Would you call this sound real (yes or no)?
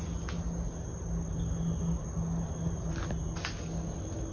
yes